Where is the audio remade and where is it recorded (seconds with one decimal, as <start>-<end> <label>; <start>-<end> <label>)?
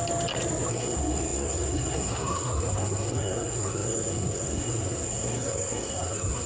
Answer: 0.0-0.7 recorded; 0.7-6.5 remade